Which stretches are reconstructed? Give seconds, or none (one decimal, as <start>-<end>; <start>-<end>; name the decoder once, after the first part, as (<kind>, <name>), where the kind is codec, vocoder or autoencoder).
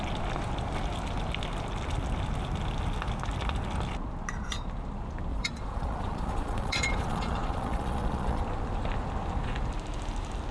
5.3-8.4 (vocoder, Vocos)